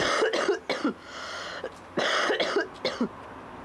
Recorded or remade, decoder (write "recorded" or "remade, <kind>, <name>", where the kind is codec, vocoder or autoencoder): recorded